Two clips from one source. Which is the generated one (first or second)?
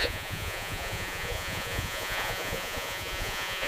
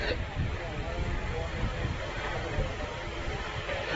first